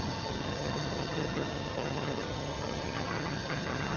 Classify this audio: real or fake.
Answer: fake